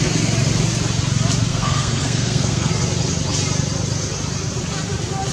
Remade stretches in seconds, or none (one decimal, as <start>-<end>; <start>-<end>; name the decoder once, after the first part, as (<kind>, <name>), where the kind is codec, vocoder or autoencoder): 1.5-2.7 (codec, SNAC)